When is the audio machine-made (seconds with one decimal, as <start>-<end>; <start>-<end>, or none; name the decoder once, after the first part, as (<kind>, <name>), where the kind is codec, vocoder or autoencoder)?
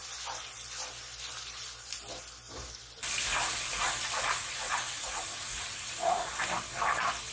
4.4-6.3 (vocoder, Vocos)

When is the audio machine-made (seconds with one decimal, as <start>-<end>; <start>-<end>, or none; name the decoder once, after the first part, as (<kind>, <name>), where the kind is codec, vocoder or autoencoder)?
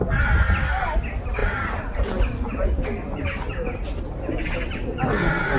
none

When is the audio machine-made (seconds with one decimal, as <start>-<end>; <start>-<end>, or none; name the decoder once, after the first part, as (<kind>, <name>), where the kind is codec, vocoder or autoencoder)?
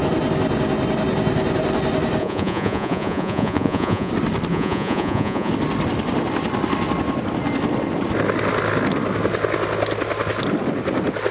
2.2-4.1 (vocoder, Vocos); 4.5-5.5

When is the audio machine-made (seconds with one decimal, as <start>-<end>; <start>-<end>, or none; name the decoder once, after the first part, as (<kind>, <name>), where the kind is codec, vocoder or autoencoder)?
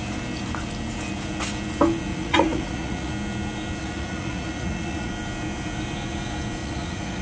2.1-3.1 (vocoder, Vocos); 3.8-5.1; 6.6-7.2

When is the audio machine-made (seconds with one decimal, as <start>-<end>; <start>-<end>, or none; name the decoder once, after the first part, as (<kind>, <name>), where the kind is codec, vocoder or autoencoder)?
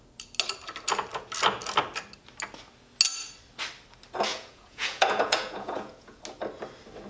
4.3-6.2 (vocoder, Vocos)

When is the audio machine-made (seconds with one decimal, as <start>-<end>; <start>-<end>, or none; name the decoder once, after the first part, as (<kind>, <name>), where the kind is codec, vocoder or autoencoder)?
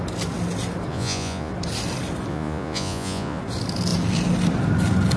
0.9-1.5 (vocoder, Vocos); 2.3-3.4